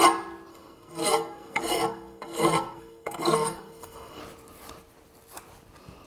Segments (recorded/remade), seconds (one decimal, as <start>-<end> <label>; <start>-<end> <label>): 0.0-0.5 recorded; 0.5-4.2 remade; 4.2-6.1 recorded